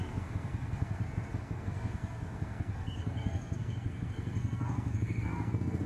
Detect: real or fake fake